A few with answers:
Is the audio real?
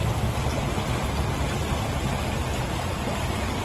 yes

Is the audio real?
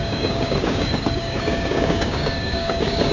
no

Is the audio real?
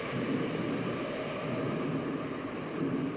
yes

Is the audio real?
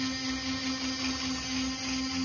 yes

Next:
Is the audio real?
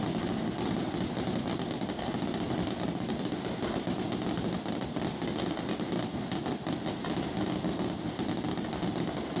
yes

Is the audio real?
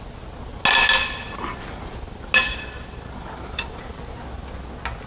yes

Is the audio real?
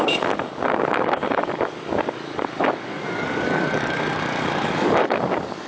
no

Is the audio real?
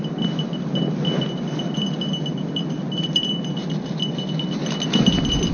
yes